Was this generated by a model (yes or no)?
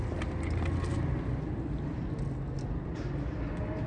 no